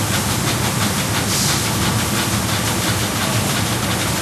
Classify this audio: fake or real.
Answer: real